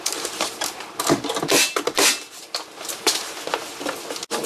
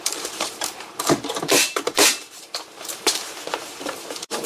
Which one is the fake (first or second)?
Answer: second